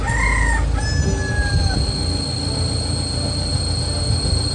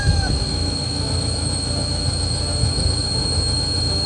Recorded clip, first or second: first